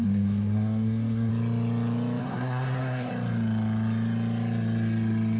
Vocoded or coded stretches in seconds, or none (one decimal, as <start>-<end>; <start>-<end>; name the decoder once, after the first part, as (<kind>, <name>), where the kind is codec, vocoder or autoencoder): 0.0-1.3 (codec, SNAC); 2.2-3.1